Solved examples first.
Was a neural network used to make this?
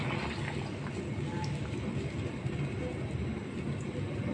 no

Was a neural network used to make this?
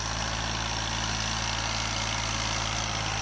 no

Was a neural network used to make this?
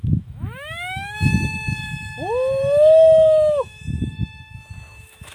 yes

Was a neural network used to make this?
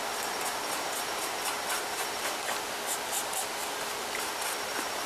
no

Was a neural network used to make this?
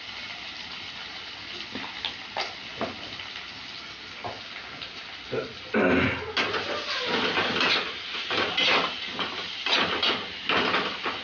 no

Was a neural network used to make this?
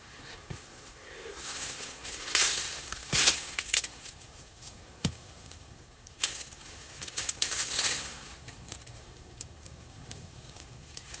yes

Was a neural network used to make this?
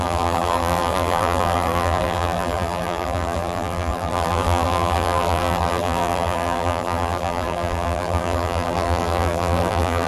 yes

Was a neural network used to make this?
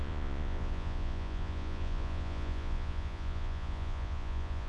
yes